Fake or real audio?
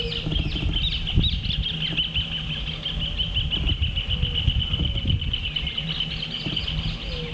real